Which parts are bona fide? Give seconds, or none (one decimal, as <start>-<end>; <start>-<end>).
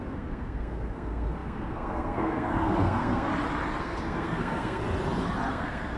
3.3-3.8; 4.8-5.5